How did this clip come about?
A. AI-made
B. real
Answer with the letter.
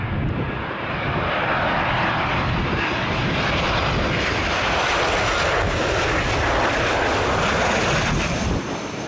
B